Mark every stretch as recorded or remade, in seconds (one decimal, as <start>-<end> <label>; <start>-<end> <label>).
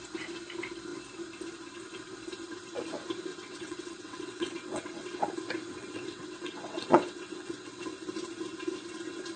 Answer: 0.0-3.3 recorded; 3.3-5.2 remade; 5.2-5.7 recorded; 5.7-7.8 remade; 7.8-9.4 recorded